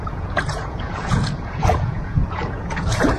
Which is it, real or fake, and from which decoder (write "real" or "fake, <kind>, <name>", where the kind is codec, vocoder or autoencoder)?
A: fake, vocoder, Vocos